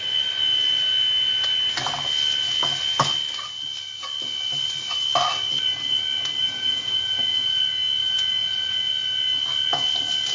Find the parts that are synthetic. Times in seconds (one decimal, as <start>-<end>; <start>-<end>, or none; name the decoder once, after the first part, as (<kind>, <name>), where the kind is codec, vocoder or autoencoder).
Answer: 6.4-7.6 (vocoder, Vocos); 8.0-8.9